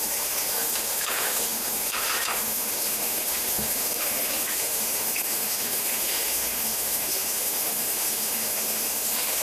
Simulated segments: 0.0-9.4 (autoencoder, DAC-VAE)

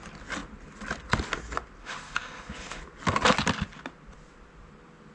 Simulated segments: 1.8-2.8 (autoencoder, DAC-VAE)

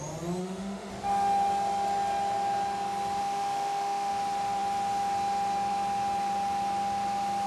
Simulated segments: 0.4-0.9 (autoencoder, DAC-VAE); 3.2-4.1

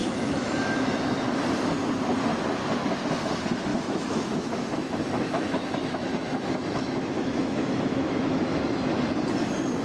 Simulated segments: 0.0-0.9 (autoencoder, DAC-VAE); 3.7-8.7

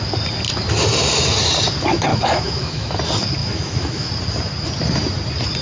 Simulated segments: 2.1-2.9 (autoencoder, DAC-VAE); 3.4-4.1

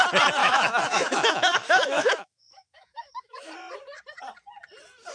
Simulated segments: 0.4-3.5 (autoencoder, DAC-VAE)